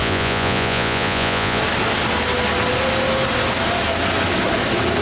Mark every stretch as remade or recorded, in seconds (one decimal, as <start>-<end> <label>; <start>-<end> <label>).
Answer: 0.0-1.6 remade; 1.6-5.0 recorded